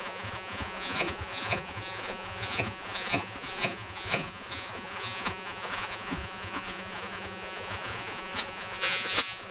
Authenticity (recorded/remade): remade